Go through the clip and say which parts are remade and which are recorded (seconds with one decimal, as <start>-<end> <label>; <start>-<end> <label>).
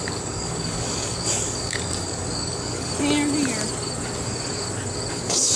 0.0-2.9 remade; 2.9-5.1 recorded; 5.1-5.6 remade